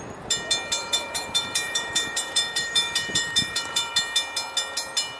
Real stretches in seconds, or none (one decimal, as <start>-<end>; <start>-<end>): 0.0-0.8; 3.9-5.2